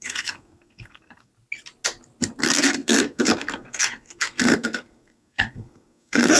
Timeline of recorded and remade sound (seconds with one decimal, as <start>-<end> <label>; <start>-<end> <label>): 0.0-1.3 remade; 1.3-2.4 recorded; 2.4-6.4 remade